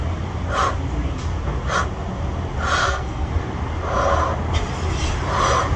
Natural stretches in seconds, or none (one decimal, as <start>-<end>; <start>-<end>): 0.0-2.8; 3.3-5.8